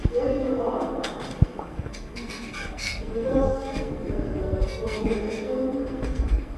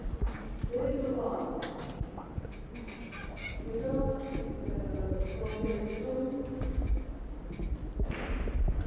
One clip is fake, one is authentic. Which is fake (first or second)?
first